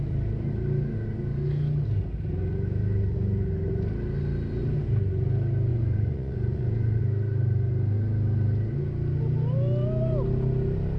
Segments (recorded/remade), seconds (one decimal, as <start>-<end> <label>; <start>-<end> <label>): 0.0-5.7 recorded; 5.7-7.0 remade; 7.0-11.0 recorded